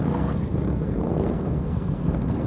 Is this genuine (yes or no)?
no